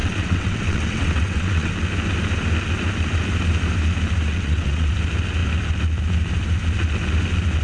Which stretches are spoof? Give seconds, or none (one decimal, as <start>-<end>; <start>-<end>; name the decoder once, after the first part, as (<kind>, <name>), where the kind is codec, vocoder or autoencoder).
0.0-1.7 (vocoder, WaveNeXt); 4.3-4.9